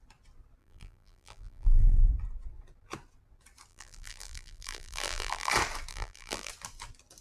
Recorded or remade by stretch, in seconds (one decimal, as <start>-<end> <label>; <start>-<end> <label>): 0.0-0.6 recorded; 0.6-2.1 remade; 2.1-3.7 recorded; 3.7-5.5 remade; 5.5-5.9 recorded; 5.9-6.5 remade; 6.5-7.2 recorded